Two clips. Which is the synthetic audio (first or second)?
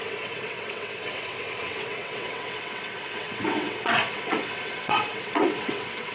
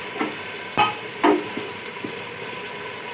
first